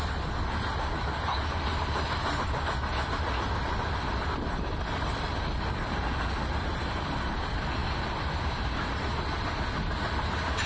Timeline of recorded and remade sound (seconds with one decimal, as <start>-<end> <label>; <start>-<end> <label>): 0.0-10.7 recorded